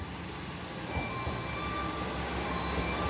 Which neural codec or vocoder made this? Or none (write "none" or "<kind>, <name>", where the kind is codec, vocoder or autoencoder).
none